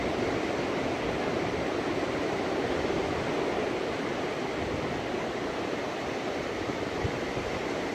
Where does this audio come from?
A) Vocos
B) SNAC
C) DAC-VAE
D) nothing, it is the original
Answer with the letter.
D